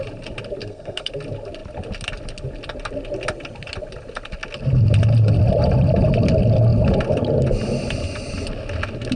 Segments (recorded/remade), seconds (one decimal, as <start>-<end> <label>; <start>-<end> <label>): 0.0-0.6 recorded; 0.6-1.1 remade; 1.1-9.2 recorded